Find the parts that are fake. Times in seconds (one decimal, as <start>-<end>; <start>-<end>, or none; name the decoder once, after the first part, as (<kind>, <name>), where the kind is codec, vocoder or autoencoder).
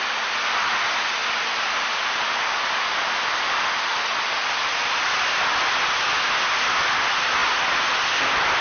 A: none